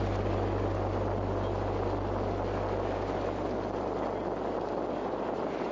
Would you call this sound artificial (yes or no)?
no